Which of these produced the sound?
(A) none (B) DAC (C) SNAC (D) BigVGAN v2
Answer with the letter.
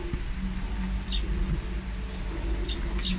A